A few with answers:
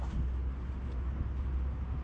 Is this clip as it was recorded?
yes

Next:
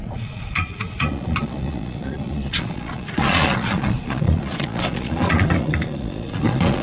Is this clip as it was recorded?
no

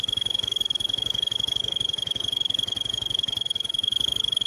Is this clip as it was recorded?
no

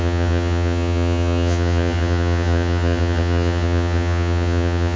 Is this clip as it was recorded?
no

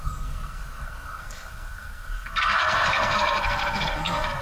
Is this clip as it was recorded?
no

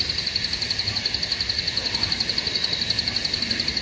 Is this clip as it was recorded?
yes